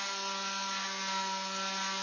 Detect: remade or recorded recorded